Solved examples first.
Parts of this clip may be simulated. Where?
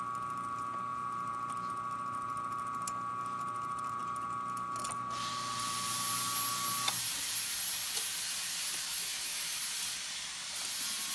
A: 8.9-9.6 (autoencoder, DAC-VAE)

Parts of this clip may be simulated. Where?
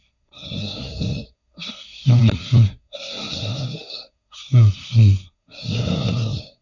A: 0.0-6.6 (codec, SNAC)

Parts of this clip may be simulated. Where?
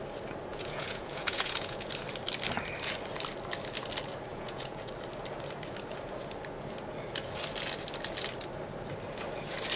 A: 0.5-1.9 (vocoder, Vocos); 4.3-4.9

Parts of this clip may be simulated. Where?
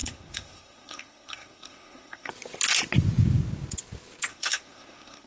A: 0.0-2.3 (codec, SNAC); 4.3-5.3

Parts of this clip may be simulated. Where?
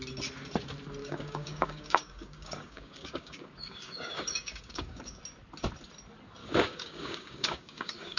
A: 1.0-5.2 (codec, DAC); 6.4-8.2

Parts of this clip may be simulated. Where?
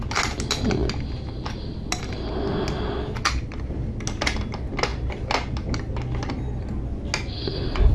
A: none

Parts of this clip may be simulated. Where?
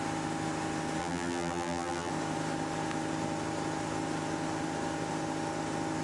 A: 1.0-2.1 (vocoder, BigVGAN v2)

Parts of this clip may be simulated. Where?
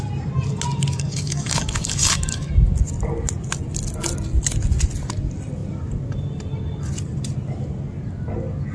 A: 0.9-2.5 (codec, DAC)